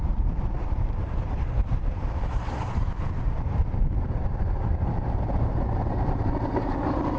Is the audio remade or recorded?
remade